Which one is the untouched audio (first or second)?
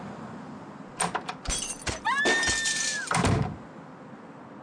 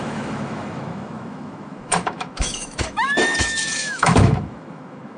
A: first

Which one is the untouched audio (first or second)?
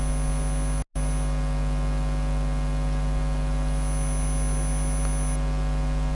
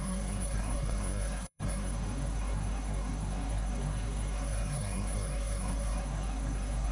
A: first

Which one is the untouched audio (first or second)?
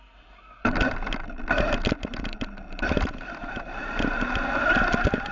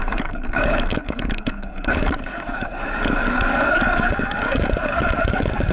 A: first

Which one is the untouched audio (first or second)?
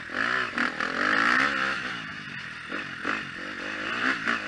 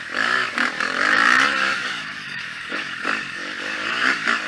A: first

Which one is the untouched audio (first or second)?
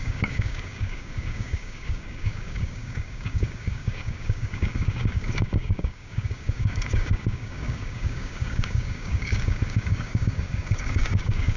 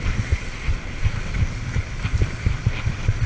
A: second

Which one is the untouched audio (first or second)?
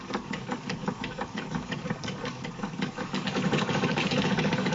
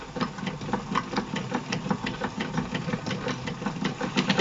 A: second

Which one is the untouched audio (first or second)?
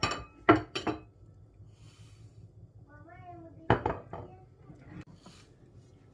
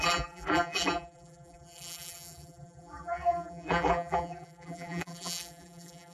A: first